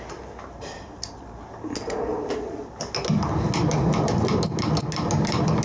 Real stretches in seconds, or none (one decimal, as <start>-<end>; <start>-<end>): 0.0-5.6